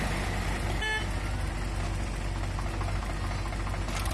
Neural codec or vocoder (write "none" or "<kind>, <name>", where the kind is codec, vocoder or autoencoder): none